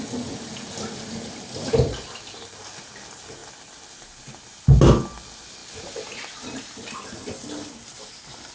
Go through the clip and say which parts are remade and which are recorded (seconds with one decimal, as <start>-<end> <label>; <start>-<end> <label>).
0.0-8.5 recorded